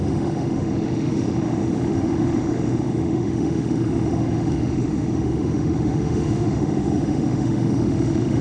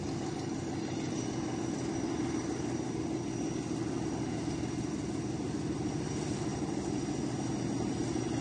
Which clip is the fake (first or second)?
first